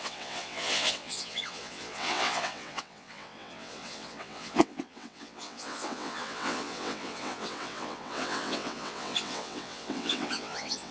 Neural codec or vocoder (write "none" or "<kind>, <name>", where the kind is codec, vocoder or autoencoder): vocoder, WaveNeXt